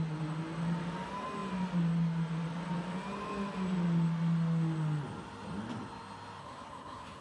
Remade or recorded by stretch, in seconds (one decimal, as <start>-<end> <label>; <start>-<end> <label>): 0.0-6.4 recorded; 6.4-7.2 remade